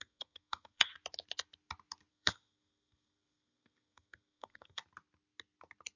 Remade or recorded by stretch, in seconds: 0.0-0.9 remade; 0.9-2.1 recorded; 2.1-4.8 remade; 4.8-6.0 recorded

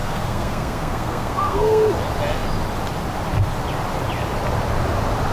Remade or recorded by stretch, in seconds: 0.0-1.9 remade; 1.9-5.3 recorded

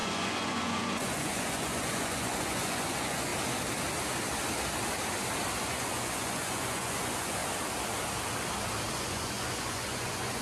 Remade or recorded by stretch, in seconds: 0.0-3.3 remade; 3.3-5.6 recorded; 5.6-7.4 remade; 7.4-8.9 recorded; 8.9-10.4 remade

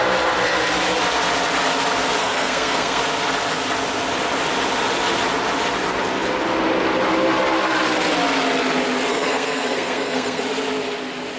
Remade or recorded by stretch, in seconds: 0.0-2.2 recorded; 2.2-3.0 remade; 3.0-9.1 recorded; 9.1-10.4 remade; 10.4-11.4 recorded

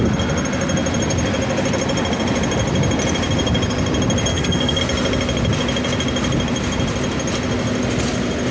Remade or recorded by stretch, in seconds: 0.0-4.3 recorded; 4.3-4.8 remade; 4.8-8.5 recorded

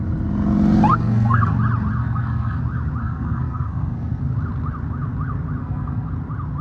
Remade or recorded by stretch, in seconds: 0.0-0.9 recorded; 0.9-1.5 remade; 1.5-2.0 recorded; 2.0-2.6 remade; 2.6-3.0 recorded; 3.0-4.2 remade; 4.2-5.6 recorded; 5.6-6.1 remade; 6.1-6.6 recorded

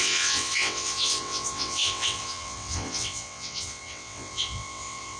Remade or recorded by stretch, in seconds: 0.0-5.2 remade

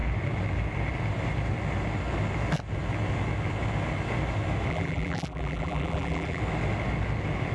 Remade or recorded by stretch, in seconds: 0.0-4.7 recorded; 4.7-6.4 remade; 6.4-7.5 recorded